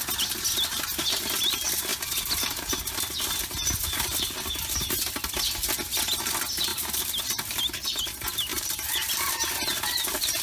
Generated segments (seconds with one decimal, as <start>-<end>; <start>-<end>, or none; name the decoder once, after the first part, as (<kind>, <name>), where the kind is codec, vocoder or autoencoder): 6.7-7.3 (vocoder, BigVGAN v2); 8.5-9.6